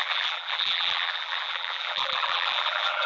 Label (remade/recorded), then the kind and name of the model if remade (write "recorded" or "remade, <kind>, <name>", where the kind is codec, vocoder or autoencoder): remade, vocoder, BigVGAN v2